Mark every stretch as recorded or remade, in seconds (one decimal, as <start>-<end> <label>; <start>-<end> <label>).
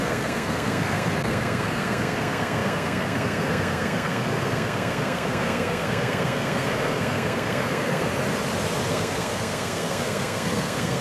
0.0-8.1 remade; 8.1-8.9 recorded; 8.9-11.0 remade